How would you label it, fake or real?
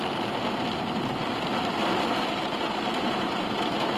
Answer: real